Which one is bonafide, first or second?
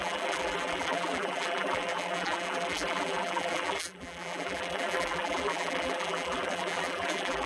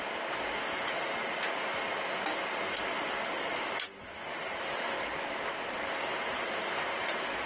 second